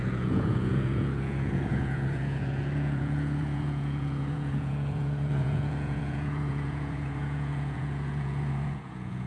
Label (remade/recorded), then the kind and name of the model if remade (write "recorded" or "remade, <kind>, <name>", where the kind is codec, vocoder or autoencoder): remade, vocoder, Vocos